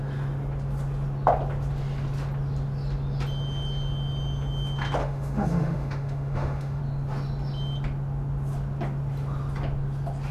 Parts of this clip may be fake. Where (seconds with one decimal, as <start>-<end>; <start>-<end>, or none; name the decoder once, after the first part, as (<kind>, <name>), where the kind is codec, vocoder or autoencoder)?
5.0-6.8 (autoencoder, DAC-VAE)